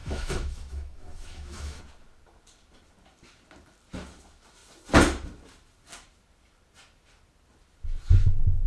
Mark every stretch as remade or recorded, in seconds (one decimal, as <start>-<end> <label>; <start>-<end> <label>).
0.0-1.8 remade; 1.8-8.7 recorded